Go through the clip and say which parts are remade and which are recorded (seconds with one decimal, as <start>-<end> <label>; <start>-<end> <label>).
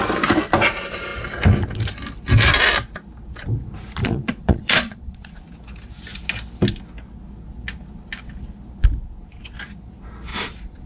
0.0-4.0 recorded; 4.0-5.3 remade; 5.3-10.3 recorded; 10.3-10.9 remade